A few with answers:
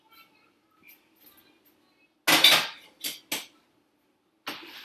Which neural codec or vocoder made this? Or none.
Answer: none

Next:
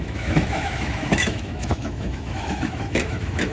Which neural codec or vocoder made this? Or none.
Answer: autoencoder, DAC-VAE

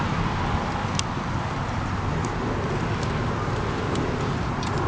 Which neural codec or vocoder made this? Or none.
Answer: none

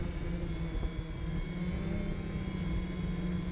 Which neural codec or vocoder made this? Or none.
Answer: none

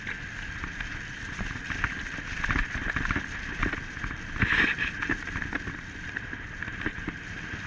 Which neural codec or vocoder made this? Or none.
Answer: none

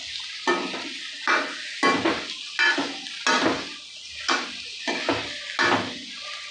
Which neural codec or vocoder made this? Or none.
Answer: none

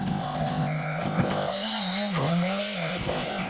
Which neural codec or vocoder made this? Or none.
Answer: codec, ZipCodec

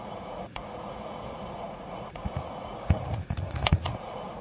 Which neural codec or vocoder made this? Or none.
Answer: vocoder, Vocos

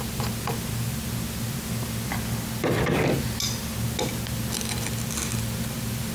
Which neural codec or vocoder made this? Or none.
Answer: none